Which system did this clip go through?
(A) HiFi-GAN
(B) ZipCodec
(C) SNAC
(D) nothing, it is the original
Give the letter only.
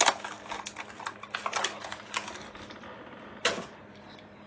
D